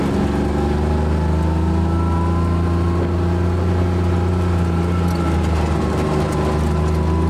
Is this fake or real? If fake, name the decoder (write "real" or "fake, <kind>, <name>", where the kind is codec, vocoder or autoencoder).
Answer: real